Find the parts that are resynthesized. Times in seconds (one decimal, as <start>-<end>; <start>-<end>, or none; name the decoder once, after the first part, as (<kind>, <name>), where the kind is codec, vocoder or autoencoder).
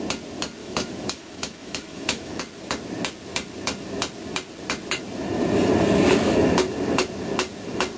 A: 0.6-2.4 (autoencoder, DAC-VAE)